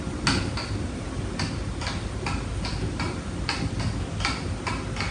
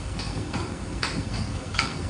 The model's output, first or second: second